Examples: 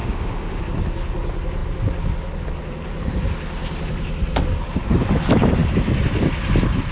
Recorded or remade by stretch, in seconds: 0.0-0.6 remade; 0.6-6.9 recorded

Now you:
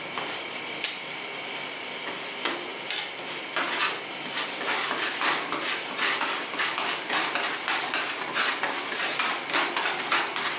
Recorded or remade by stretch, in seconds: 0.0-10.6 recorded

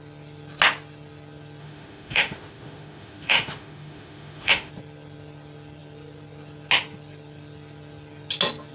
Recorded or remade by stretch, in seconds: 0.0-1.6 recorded; 1.6-4.7 remade; 4.7-8.7 recorded